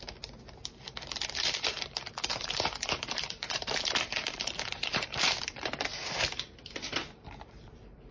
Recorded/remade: remade